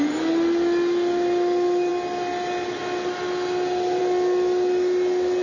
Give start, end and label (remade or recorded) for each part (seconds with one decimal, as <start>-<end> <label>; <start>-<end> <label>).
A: 0.0-5.4 recorded